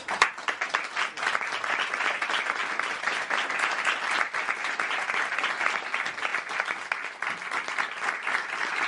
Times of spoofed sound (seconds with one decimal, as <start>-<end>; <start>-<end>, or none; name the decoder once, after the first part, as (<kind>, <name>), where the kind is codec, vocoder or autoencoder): none

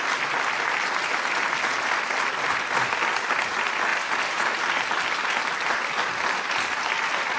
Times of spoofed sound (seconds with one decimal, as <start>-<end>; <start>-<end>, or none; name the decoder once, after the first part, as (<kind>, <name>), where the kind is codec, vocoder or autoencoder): 3.9-4.6 (vocoder, BigVGAN v2)

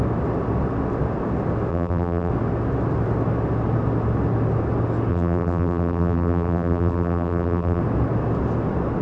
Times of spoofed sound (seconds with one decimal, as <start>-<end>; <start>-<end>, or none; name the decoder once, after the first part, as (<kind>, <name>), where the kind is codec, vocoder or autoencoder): 1.7-2.3 (vocoder, BigVGAN v2); 5.1-7.8

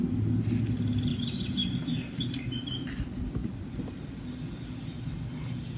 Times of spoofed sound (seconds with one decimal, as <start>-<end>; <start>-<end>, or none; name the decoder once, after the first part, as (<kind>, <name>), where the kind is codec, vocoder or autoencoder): none

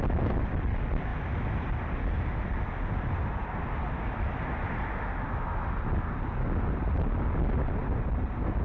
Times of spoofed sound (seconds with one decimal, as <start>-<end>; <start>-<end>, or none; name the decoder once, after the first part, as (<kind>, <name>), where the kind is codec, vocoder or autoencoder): none

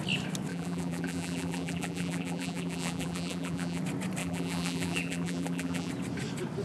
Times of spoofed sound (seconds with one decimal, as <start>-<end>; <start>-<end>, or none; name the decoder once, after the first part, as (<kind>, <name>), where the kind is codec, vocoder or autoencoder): 0.5-3.8 (vocoder, BigVGAN v2); 4.2-5.9